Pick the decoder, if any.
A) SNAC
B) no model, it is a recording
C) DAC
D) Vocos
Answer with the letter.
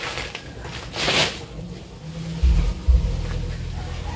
B